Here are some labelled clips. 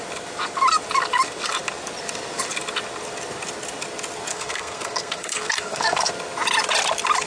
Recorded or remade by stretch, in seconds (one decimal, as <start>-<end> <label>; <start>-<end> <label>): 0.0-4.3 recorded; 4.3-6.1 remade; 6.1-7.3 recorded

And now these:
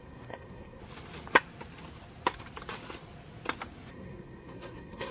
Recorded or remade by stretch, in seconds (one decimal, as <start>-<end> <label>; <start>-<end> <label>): 0.0-0.8 remade; 0.8-3.9 recorded; 3.9-5.1 remade

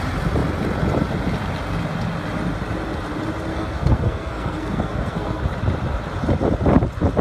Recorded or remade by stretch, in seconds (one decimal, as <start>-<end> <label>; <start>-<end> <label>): 0.0-3.5 recorded; 3.5-5.4 remade; 5.4-7.2 recorded